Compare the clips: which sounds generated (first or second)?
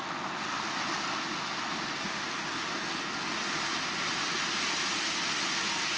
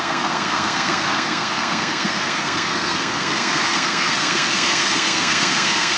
second